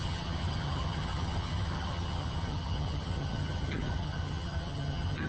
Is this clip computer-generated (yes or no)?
yes